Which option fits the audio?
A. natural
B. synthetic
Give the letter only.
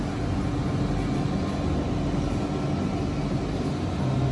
A